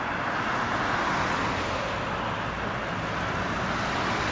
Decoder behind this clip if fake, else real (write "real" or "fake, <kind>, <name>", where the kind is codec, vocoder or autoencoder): real